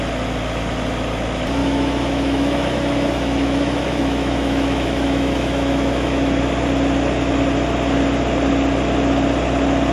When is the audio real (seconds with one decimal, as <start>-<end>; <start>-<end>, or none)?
0.0-1.6; 6.4-9.9